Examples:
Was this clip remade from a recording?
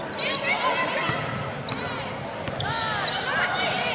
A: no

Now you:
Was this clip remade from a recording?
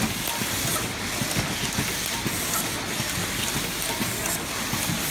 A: no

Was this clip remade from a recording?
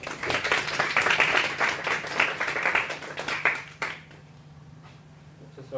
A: yes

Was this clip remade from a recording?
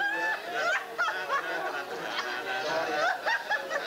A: no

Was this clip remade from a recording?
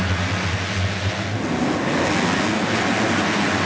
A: no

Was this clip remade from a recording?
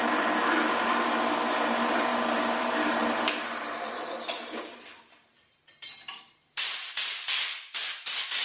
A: yes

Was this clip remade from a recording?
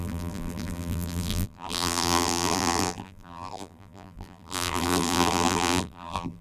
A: yes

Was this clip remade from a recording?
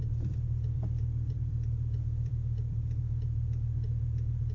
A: yes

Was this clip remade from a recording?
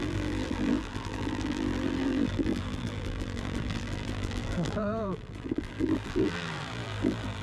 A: yes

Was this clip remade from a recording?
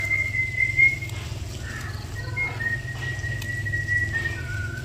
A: no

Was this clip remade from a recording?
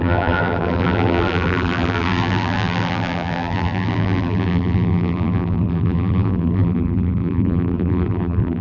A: yes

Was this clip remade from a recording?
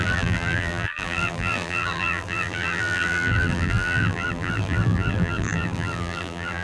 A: yes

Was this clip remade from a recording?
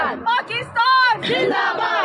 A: no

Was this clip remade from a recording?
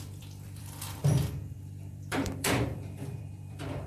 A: yes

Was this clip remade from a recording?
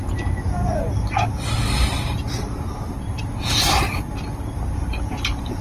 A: yes